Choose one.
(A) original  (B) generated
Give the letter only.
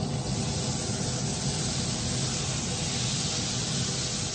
A